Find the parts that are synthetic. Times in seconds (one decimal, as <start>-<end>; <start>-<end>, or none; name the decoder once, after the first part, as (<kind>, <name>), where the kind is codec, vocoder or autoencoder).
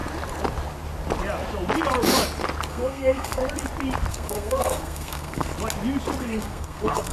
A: 2.7-3.4 (codec, SNAC); 4.1-5.5; 6.2-7.1